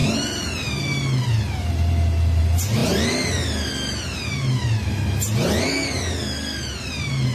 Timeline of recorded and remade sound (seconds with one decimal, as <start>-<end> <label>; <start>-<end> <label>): 0.0-7.3 recorded

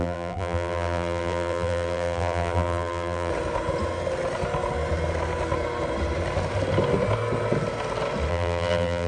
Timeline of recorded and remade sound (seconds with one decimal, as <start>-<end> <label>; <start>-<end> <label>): 0.0-3.3 remade; 3.3-8.3 recorded; 8.3-9.1 remade

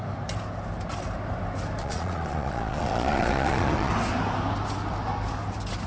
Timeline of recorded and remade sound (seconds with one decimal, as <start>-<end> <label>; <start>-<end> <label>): 0.0-1.8 recorded; 1.8-3.9 remade; 3.9-5.9 recorded

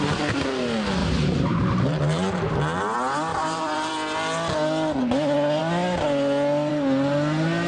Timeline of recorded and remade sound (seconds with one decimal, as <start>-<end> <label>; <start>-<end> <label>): 0.0-1.0 recorded; 1.0-2.6 remade; 2.6-3.3 recorded; 3.3-3.9 remade; 3.9-7.7 recorded

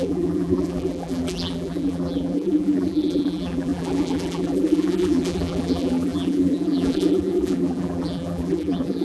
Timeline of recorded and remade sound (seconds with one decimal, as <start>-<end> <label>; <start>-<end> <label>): 0.0-9.0 remade